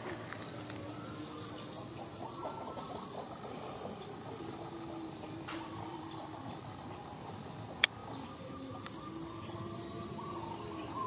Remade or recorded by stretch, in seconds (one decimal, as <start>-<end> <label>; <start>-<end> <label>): 0.0-2.1 recorded; 2.1-4.4 remade; 4.4-5.9 recorded; 5.9-6.6 remade; 6.6-11.1 recorded